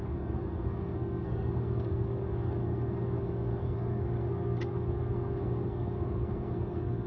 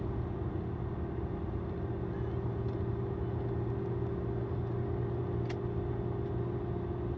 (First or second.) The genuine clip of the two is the second